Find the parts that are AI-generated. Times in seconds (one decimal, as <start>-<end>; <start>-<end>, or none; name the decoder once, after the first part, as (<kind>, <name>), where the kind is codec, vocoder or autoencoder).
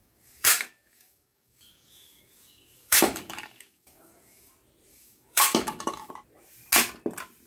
0.0-4.5 (codec, DAC); 4.9-6.1